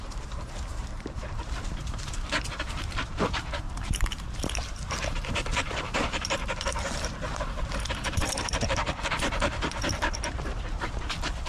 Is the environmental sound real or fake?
fake